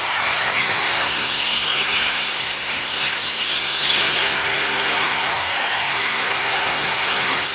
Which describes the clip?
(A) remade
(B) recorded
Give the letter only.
A